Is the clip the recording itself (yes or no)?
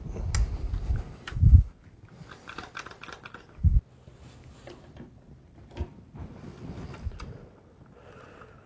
yes